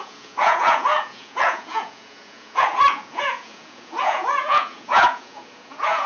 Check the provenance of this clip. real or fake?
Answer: fake